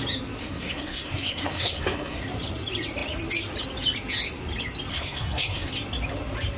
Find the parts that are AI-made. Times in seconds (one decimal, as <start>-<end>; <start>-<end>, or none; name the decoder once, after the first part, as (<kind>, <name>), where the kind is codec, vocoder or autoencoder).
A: 0.4-2.2 (codec, SNAC); 4.9-5.7